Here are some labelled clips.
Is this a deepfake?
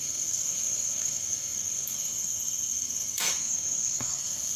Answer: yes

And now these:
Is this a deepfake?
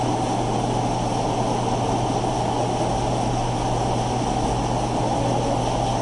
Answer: no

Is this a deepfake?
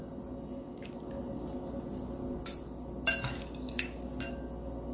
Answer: no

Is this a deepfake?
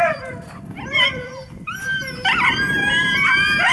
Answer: yes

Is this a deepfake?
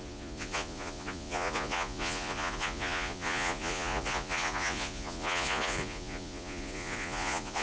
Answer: yes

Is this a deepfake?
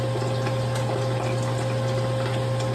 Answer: no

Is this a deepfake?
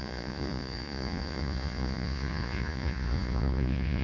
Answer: yes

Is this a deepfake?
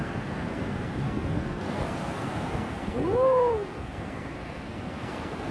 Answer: yes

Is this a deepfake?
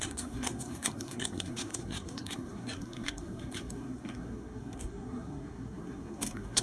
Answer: yes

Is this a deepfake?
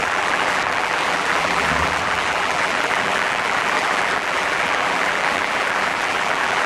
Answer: yes